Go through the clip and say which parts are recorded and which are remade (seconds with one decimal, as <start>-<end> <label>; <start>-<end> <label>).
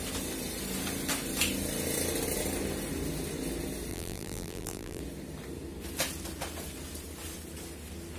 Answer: 0.0-3.9 recorded; 3.9-5.0 remade; 5.0-8.2 recorded